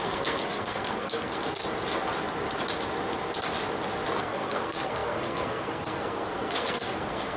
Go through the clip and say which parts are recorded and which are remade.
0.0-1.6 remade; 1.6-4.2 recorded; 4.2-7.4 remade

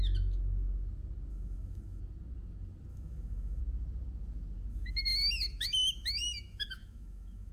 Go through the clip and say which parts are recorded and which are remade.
0.0-1.3 recorded; 1.3-2.0 remade; 2.0-2.9 recorded; 2.9-3.6 remade; 3.6-4.7 recorded; 4.7-7.5 remade

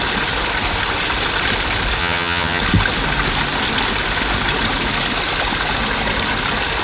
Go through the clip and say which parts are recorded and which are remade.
0.0-2.0 recorded; 2.0-2.6 remade; 2.6-6.8 recorded

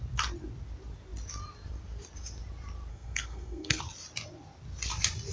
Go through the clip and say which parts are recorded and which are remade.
0.0-2.9 recorded; 2.9-3.8 remade; 3.8-5.3 recorded

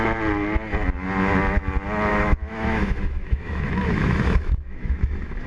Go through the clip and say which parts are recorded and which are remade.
0.0-2.1 recorded; 2.1-5.5 remade

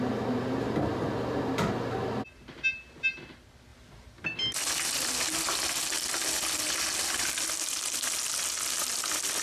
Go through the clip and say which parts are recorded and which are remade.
0.0-9.4 recorded

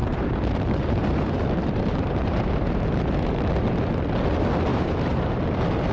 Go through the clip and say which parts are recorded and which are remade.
0.0-3.5 remade; 3.5-4.7 recorded; 4.7-5.4 remade; 5.4-5.9 recorded